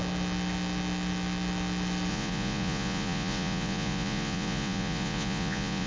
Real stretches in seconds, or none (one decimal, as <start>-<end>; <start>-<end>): 0.0-2.1